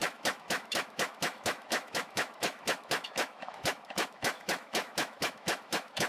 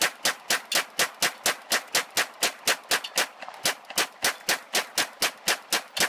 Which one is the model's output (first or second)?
first